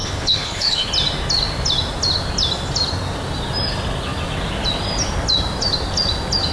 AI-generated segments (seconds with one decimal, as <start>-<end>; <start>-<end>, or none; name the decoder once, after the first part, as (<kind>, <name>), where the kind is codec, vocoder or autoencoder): 0.0-0.9 (codec, HILCodec)